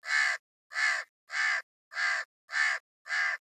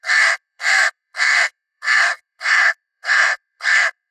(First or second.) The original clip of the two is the first